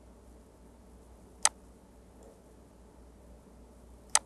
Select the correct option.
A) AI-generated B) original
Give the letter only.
B